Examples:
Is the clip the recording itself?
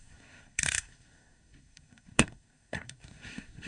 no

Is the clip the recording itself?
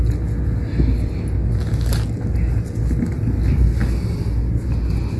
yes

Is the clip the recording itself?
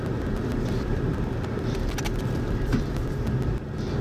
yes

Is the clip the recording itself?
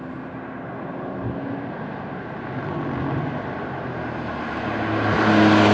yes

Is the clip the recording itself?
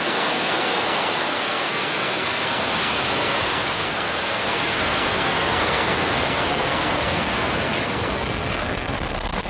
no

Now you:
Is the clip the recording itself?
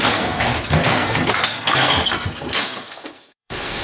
no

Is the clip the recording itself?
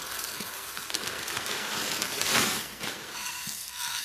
no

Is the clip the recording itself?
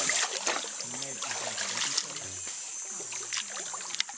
yes